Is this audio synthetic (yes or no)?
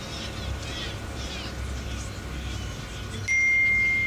no